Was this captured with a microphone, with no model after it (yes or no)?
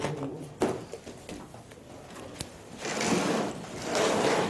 yes